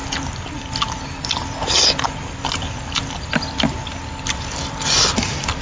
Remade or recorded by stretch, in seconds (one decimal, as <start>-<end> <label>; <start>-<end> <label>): 0.0-5.6 recorded